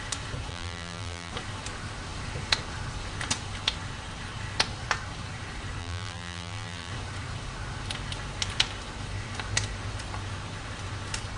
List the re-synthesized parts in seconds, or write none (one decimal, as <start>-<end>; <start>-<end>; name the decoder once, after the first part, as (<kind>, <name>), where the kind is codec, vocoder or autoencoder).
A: 0.5-1.3 (vocoder, BigVGAN v2); 5.8-6.9